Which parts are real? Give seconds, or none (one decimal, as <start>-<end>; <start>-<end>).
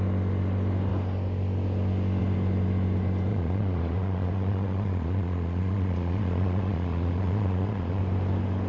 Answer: 0.0-3.3; 8.0-8.7